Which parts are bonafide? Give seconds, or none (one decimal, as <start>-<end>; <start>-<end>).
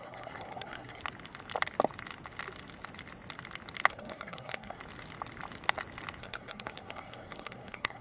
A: 1.0-3.9; 4.8-6.2